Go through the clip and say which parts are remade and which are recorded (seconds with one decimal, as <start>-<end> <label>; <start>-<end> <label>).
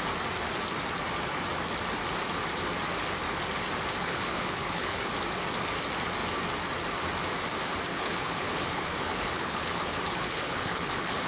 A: 0.0-4.0 recorded; 4.0-5.1 remade; 5.1-7.9 recorded; 7.9-11.3 remade